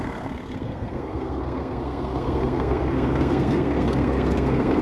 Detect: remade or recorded remade